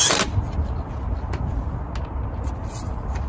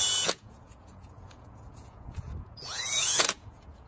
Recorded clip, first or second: first